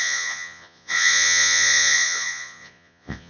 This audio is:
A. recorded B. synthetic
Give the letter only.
B